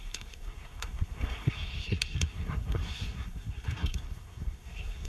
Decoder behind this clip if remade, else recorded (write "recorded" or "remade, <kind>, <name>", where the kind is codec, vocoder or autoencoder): remade, codec, SNAC